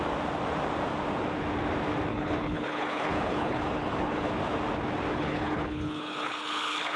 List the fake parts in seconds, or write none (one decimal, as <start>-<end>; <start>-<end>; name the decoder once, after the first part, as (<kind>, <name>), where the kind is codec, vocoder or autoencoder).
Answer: 2.1-4.3 (codec, HILCodec); 5.1-7.0